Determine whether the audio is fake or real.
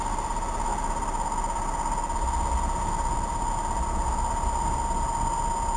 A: real